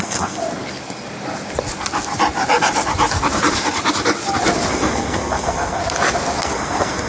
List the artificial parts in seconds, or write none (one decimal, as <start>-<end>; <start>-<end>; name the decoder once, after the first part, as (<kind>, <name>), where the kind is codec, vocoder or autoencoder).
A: 0.0-0.4 (codec, SNAC); 4.7-5.8; 6.4-7.1